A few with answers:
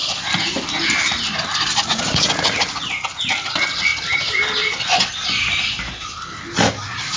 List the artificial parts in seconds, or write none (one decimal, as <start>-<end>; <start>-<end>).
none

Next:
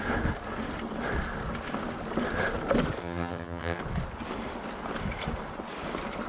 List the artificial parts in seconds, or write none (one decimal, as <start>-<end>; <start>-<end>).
3.0-3.8

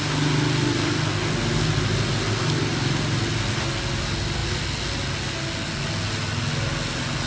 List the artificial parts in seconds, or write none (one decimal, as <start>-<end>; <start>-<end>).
none

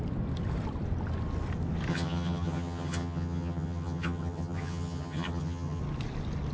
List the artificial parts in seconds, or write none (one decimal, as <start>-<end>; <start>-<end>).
1.9-5.8

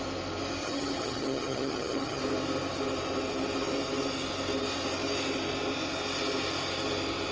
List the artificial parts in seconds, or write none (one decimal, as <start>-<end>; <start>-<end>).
0.6-2.2

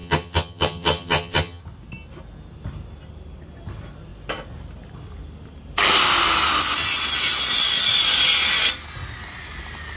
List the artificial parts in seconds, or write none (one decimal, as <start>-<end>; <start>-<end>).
0.0-1.6